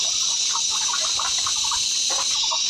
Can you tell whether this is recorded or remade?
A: recorded